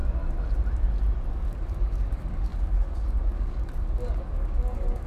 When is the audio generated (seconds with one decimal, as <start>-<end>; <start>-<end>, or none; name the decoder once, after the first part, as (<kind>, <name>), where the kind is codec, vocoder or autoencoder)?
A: 1.3-5.1 (codec, DAC)